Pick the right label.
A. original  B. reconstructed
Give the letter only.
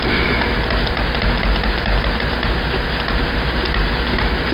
A